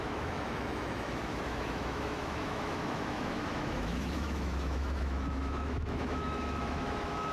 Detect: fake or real fake